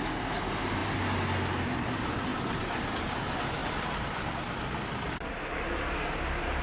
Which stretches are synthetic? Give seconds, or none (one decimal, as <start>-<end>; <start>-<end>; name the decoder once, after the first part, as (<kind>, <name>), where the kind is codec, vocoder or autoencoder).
2.3-2.9 (vocoder, BigVGAN v2); 3.6-4.4